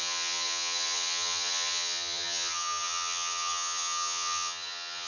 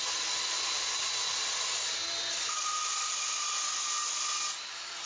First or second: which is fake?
first